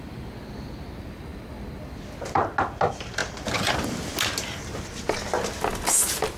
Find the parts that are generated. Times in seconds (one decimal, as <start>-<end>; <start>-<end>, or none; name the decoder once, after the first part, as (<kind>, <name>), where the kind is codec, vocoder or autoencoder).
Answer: none